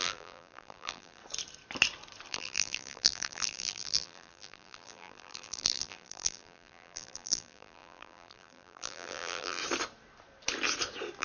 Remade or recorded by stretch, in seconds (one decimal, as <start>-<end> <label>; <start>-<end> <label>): 0.0-1.2 remade; 1.2-2.3 recorded; 2.3-9.6 remade; 9.6-11.2 recorded